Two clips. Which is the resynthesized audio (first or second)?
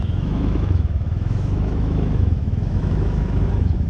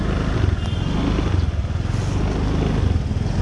first